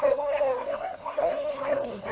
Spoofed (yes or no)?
yes